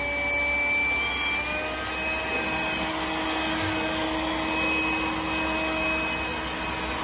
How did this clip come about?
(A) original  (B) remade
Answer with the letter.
A